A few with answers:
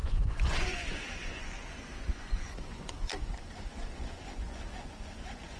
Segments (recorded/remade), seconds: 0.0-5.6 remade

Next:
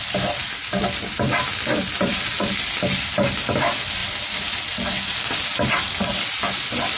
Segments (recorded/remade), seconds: 0.0-7.0 recorded

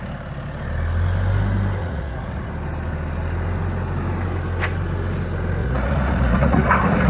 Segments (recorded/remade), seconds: 0.0-1.8 recorded; 1.8-2.5 remade; 2.5-5.6 recorded; 5.6-7.1 remade

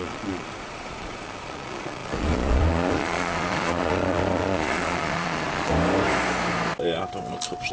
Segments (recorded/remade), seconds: 0.0-5.7 remade; 5.7-7.7 recorded

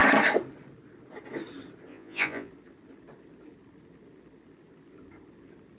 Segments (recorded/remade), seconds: 0.0-1.9 recorded; 1.9-2.5 remade; 2.5-5.8 recorded